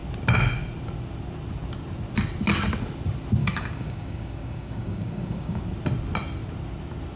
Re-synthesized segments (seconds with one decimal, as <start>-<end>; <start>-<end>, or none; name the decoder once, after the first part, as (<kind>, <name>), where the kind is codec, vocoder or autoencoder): 3.4-5.6 (codec, DAC)